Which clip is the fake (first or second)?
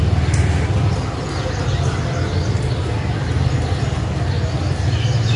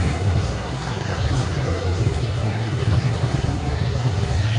second